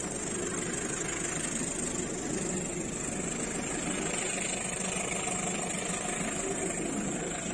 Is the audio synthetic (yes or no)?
no